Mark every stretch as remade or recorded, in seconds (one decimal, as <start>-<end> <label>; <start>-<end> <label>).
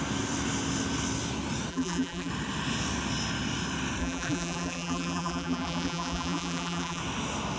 0.0-1.7 recorded; 1.7-2.3 remade; 2.3-4.0 recorded; 4.0-7.0 remade; 7.0-7.6 recorded